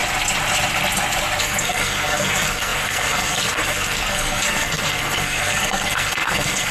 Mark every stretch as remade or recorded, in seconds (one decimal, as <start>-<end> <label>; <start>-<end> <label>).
0.0-1.4 recorded; 1.4-6.7 remade

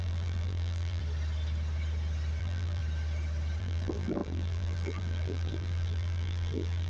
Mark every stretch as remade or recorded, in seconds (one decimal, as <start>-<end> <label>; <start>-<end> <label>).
0.0-1.0 remade; 1.0-2.4 recorded; 2.4-2.8 remade; 2.8-3.6 recorded; 3.6-6.9 remade

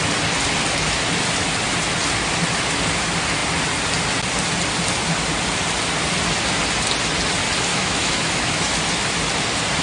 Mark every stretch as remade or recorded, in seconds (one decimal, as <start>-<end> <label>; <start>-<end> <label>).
0.0-7.7 recorded; 7.7-8.8 remade; 8.8-9.8 recorded

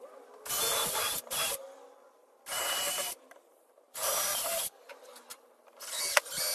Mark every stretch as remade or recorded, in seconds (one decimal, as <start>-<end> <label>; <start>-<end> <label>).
0.0-2.2 recorded; 2.2-4.6 remade; 4.6-6.5 recorded

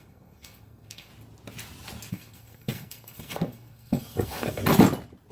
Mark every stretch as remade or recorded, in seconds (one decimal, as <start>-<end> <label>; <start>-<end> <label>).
0.0-1.1 remade; 1.1-2.1 recorded; 2.1-4.6 remade; 4.6-5.3 recorded

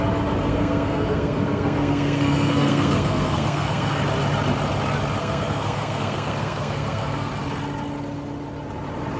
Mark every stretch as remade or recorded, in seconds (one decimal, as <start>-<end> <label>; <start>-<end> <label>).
0.0-0.5 recorded; 0.5-4.0 remade; 4.0-5.2 recorded; 5.2-7.3 remade; 7.3-9.2 recorded

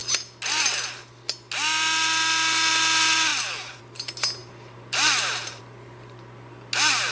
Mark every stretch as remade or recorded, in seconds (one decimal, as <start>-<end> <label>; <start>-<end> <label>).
0.0-3.3 recorded; 3.3-3.8 remade; 3.8-4.4 recorded; 4.4-5.6 remade; 5.6-7.1 recorded